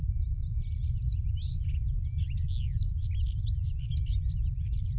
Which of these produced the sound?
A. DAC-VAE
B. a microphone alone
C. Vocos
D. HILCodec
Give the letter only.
B